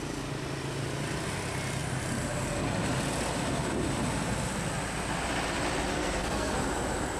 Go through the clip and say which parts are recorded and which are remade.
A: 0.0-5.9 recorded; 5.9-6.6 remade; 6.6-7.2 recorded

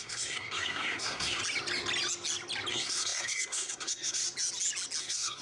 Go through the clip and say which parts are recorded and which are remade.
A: 0.0-1.4 remade; 1.4-2.7 recorded; 2.7-4.2 remade; 4.2-5.0 recorded; 5.0-5.4 remade

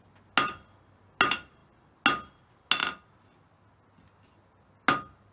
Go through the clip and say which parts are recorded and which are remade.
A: 0.0-5.3 recorded

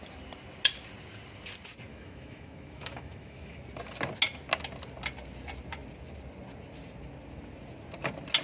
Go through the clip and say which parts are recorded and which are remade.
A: 0.0-1.9 recorded; 1.9-3.6 remade; 3.6-8.4 recorded

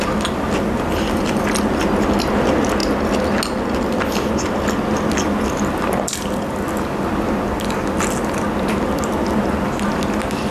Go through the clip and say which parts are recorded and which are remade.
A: 0.0-10.5 recorded

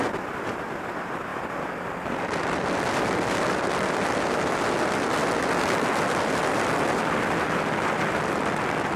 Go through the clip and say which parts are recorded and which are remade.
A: 0.0-9.0 recorded

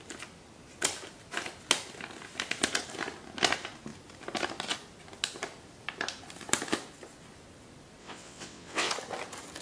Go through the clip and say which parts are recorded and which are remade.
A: 0.0-8.0 recorded; 8.0-8.9 remade; 8.9-9.6 recorded